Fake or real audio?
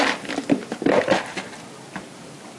real